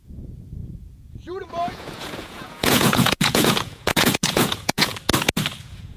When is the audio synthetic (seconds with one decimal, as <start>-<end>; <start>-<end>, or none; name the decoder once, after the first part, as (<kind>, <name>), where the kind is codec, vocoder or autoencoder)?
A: 0.0-4.9 (vocoder, Vocos); 5.6-6.0